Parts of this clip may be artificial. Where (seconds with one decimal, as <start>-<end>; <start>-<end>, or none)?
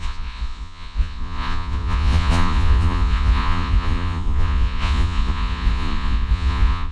0.0-6.9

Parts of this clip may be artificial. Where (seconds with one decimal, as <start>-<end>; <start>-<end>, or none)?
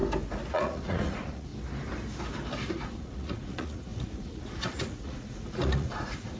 0.5-1.5; 2.7-6.4